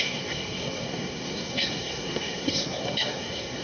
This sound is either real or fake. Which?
fake